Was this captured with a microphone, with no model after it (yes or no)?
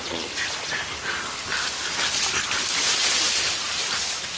yes